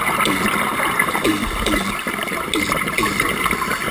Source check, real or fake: real